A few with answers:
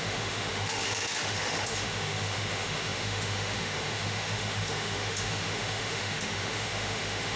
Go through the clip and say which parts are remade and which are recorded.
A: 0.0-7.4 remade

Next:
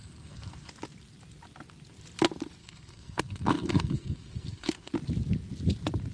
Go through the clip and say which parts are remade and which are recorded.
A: 0.0-0.7 remade; 0.7-2.6 recorded; 2.6-4.9 remade; 4.9-6.1 recorded

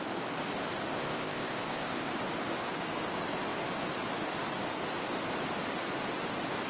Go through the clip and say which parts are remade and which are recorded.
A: 0.0-0.9 recorded; 0.9-2.1 remade; 2.1-6.7 recorded

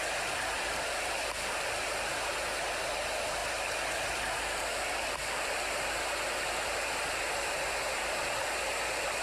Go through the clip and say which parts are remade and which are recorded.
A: 0.0-9.2 recorded

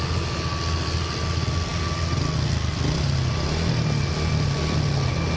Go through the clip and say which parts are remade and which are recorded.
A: 0.0-5.4 recorded

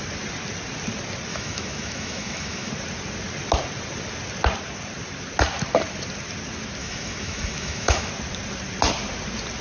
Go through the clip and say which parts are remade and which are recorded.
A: 0.0-1.3 recorded; 1.3-2.7 remade; 2.7-6.8 recorded; 6.8-8.1 remade; 8.1-9.6 recorded

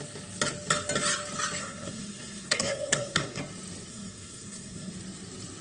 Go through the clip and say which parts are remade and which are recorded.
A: 0.0-1.6 recorded; 1.6-3.4 remade; 3.4-3.9 recorded; 3.9-4.9 remade; 4.9-5.6 recorded

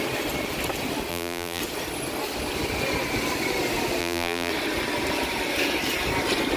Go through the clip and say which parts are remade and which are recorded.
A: 0.0-1.1 recorded; 1.1-1.6 remade; 1.6-4.0 recorded; 4.0-4.5 remade; 4.5-6.6 recorded